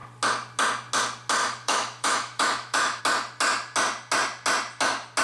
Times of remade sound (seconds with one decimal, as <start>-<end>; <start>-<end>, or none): 1.4-3.0